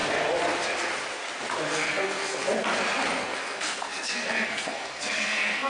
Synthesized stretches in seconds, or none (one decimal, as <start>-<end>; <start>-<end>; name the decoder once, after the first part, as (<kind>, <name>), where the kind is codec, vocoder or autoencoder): 1.7-2.5 (codec, SNAC); 3.2-5.7